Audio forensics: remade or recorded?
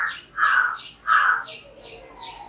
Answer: recorded